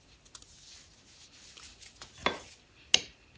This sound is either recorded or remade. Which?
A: recorded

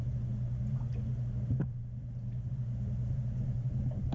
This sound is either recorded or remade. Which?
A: recorded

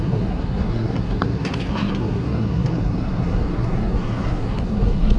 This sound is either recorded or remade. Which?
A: remade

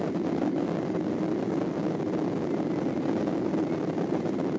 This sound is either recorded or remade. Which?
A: recorded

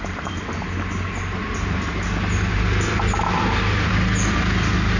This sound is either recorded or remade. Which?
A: recorded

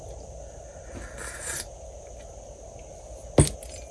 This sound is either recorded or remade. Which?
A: recorded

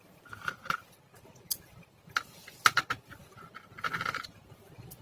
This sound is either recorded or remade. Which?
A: recorded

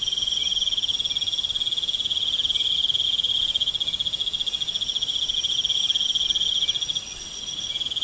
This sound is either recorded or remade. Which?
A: recorded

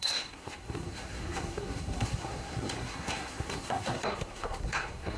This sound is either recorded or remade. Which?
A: remade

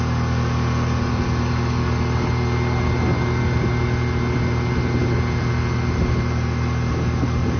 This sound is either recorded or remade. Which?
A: recorded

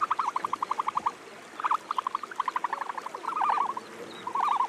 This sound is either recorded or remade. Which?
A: recorded